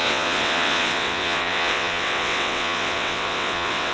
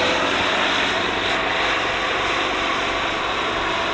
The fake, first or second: first